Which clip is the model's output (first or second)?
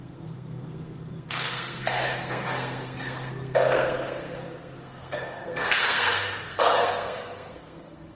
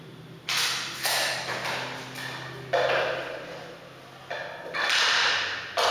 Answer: first